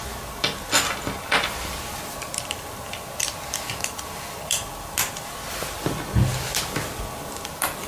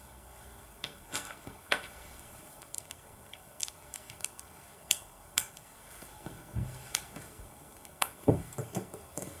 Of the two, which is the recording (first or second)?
first